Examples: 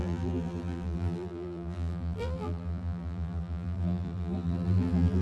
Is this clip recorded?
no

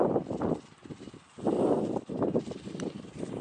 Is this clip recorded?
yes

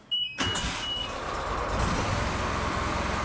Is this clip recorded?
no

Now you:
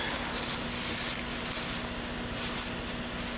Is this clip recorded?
yes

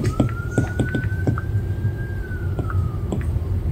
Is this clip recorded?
no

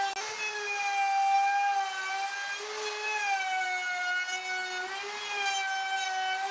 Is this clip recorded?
yes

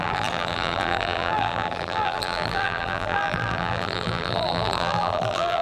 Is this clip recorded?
no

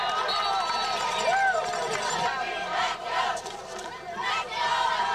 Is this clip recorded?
yes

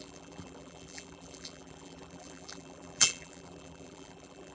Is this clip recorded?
no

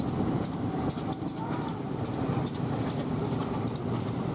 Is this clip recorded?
yes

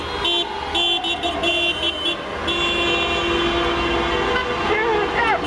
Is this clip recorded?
yes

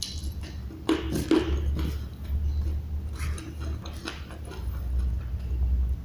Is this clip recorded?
yes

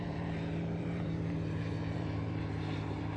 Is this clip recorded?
no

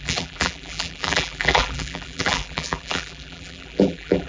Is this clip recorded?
no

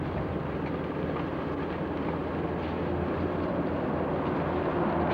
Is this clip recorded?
yes